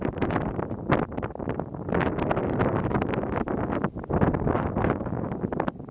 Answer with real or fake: real